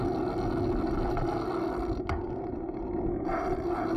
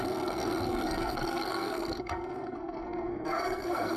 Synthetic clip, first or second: second